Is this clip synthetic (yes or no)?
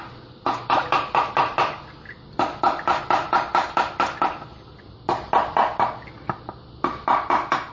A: no